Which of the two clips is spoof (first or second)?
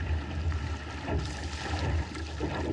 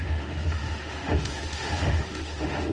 second